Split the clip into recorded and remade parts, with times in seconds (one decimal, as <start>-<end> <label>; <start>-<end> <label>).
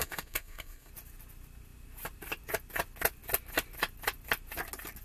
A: 0.0-0.9 remade; 0.9-5.0 recorded